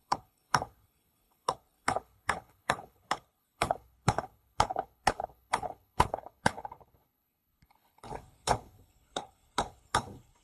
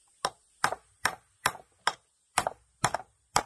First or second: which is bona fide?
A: second